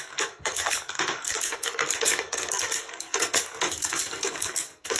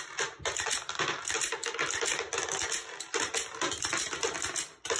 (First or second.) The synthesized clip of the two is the first